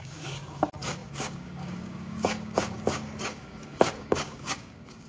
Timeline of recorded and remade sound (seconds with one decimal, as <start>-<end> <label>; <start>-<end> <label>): 0.0-5.1 remade